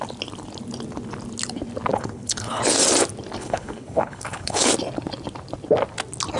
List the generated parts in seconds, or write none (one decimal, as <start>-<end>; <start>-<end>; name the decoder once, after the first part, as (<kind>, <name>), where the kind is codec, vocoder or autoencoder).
1.9-2.6 (codec, HILCodec); 3.4-4.7